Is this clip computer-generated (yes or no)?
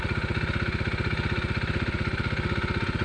no